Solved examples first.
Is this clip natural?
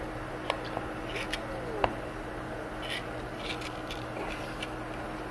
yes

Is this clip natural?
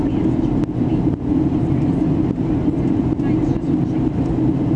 yes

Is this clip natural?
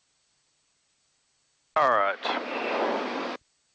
yes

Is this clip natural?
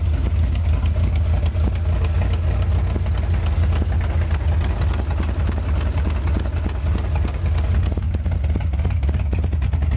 yes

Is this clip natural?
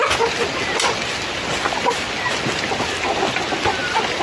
yes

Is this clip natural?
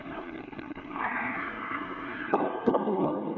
no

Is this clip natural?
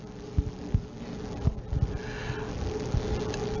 yes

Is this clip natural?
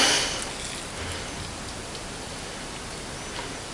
yes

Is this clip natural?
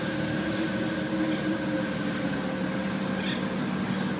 yes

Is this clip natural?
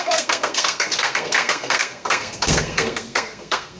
no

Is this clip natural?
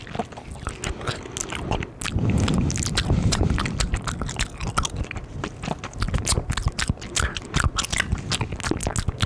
yes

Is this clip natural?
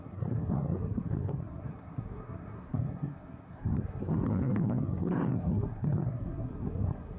no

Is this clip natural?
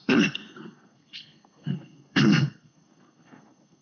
no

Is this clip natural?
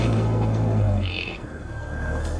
no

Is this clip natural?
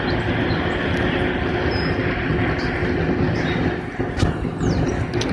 yes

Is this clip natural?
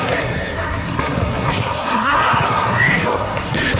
no